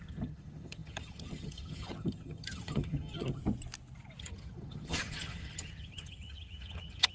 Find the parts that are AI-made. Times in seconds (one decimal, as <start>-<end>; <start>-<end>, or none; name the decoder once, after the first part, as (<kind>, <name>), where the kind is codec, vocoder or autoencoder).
0.0-3.4 (vocoder, HiFi-GAN); 4.2-7.1